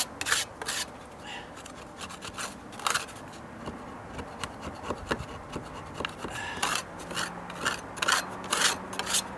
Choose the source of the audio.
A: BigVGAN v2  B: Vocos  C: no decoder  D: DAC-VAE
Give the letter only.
C